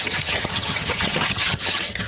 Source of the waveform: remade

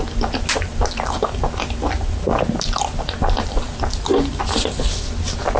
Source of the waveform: recorded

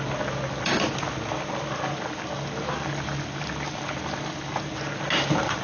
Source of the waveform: recorded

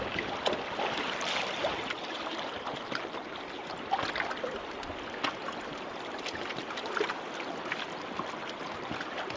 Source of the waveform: recorded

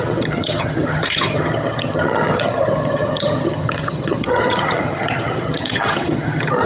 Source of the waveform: remade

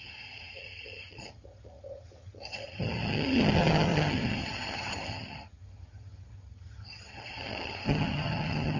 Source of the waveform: remade